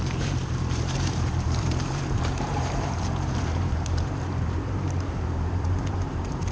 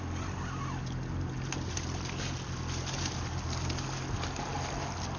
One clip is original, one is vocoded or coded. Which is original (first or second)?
second